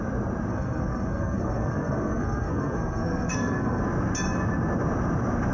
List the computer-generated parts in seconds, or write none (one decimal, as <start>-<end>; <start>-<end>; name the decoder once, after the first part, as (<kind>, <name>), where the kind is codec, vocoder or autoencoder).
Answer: 0.5-3.8 (codec, SNAC)